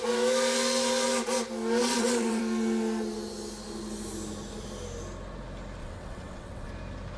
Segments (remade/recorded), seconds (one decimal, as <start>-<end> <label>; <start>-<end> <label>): 0.0-1.8 recorded; 1.8-2.4 remade; 2.4-5.8 recorded; 5.8-6.7 remade; 6.7-7.2 recorded